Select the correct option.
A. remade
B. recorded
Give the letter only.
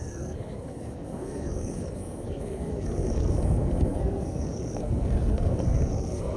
A